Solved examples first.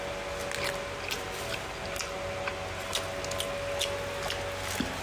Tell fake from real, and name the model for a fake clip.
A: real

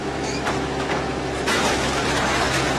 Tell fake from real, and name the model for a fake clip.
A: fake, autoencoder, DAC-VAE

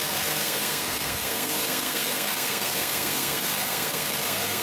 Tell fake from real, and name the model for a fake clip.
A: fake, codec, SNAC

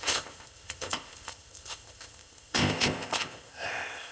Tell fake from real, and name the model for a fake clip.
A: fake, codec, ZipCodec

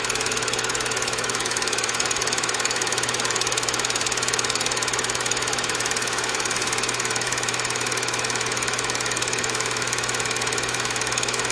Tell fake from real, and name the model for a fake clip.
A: fake, autoencoder, DAC-VAE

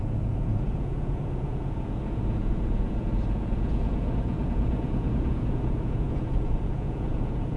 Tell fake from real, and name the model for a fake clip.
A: fake, vocoder, Vocos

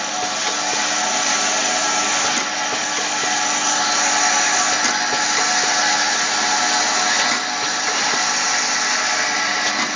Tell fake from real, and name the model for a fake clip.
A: real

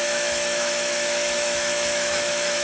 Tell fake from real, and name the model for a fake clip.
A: fake, autoencoder, DAC-VAE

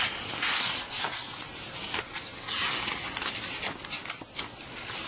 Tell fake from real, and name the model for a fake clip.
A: real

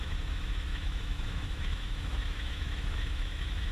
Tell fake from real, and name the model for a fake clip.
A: fake, autoencoder, DAC-VAE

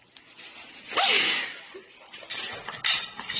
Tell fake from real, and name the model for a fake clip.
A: real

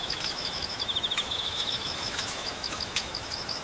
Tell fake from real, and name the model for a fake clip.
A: fake, autoencoder, DAC-VAE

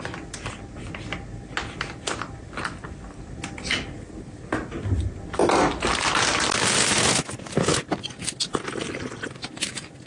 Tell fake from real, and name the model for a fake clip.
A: real